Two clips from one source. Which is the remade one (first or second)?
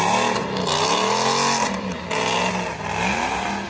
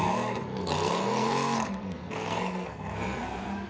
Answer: second